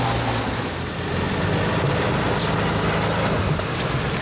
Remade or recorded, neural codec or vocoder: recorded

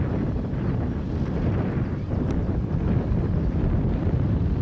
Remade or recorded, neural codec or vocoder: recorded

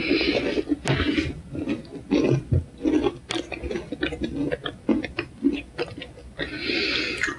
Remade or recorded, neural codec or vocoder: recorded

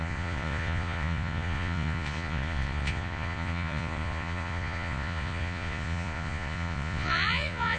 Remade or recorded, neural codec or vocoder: remade, vocoder, Vocos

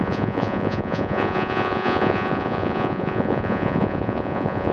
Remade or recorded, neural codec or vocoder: remade, vocoder, Vocos